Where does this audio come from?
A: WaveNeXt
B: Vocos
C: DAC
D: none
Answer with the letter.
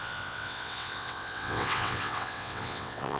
A